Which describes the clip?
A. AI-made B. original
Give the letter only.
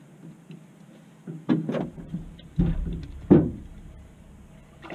B